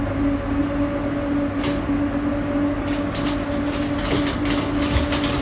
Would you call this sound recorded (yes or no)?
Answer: yes